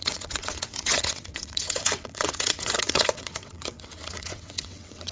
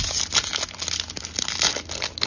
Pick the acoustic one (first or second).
second